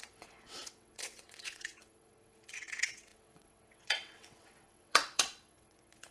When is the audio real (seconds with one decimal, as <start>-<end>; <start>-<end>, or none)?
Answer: none

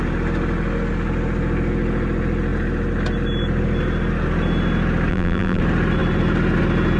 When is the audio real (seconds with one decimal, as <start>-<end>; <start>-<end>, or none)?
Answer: 0.0-5.1; 5.6-7.0

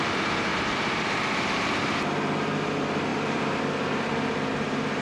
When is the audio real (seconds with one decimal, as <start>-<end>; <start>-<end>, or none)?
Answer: 0.0-0.5; 2.0-3.1; 3.6-5.0

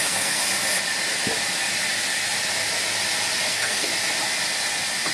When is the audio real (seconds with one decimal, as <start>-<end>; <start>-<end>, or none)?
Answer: 0.4-3.5; 3.9-5.1

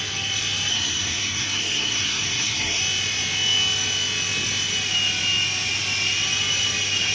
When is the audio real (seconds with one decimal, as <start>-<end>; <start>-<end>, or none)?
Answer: 0.0-0.7; 2.8-7.1

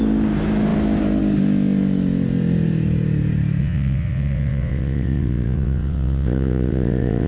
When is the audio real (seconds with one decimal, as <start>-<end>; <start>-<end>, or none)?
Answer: 0.0-3.6